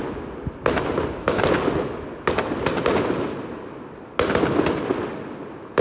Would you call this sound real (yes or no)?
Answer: yes